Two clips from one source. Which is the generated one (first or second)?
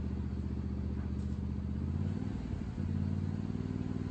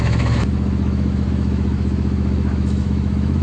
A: second